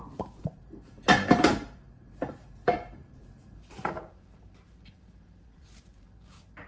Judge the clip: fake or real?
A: fake